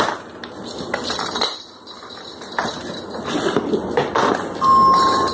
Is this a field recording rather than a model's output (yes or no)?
yes